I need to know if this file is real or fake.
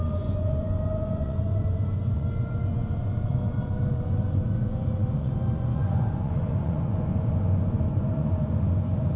fake